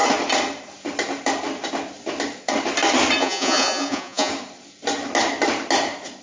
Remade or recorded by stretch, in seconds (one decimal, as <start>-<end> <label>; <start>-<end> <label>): 0.0-3.2 recorded; 3.2-4.3 remade; 4.3-6.2 recorded